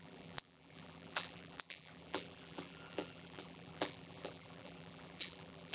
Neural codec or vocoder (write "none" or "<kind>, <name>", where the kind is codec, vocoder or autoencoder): vocoder, BigVGAN v2